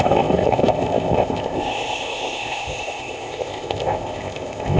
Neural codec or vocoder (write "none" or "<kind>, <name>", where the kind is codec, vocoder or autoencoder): codec, ZipCodec